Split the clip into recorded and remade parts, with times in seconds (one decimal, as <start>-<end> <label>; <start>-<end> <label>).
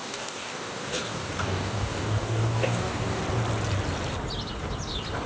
0.0-3.2 remade; 3.2-5.3 recorded